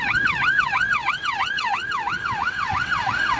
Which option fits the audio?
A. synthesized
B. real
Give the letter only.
A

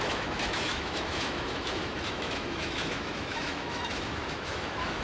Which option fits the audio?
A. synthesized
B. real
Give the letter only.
A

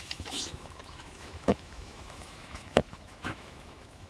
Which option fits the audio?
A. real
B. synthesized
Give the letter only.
B